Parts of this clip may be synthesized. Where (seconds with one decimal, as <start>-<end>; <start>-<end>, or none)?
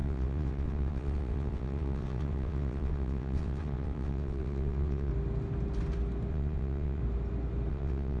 0.0-5.1; 6.3-7.0; 7.7-8.2